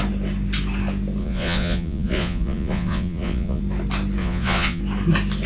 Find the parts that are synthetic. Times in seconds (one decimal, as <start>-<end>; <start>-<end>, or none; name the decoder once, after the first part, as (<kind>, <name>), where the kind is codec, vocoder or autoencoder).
1.2-3.6 (vocoder, Vocos); 4.2-4.8